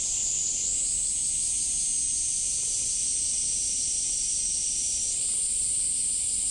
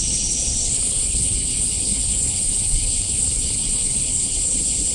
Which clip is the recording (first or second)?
first